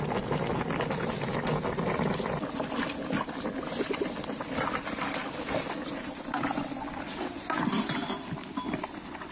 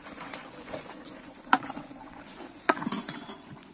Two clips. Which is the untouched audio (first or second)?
first